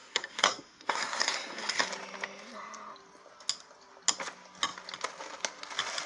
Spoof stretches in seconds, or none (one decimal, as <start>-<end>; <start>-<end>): 0.0-1.9